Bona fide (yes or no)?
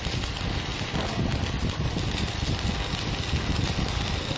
yes